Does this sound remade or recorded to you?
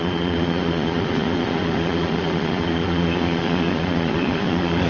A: remade